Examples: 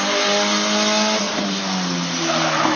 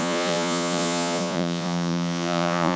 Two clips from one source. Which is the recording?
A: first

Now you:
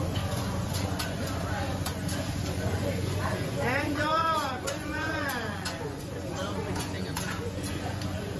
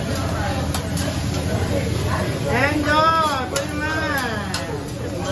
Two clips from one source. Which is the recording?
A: second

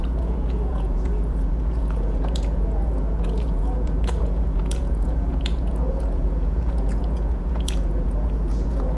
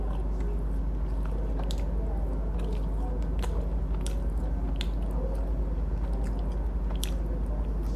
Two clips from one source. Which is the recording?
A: second